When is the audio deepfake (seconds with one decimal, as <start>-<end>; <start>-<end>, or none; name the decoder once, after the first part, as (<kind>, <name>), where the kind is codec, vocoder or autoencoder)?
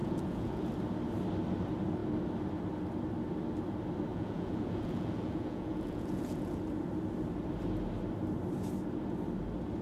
0.0-0.6 (vocoder, Vocos); 4.1-6.6